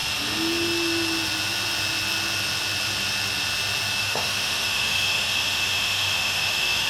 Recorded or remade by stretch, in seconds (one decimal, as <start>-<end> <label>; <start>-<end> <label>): 0.0-4.0 recorded; 4.0-6.9 remade